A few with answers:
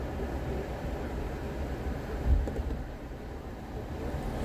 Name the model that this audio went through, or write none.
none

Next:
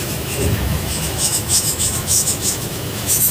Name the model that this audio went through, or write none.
autoencoder, DAC-VAE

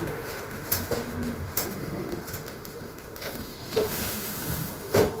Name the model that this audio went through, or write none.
autoencoder, DAC-VAE